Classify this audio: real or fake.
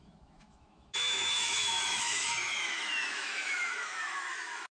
fake